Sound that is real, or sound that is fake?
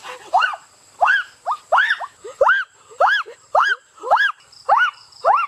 real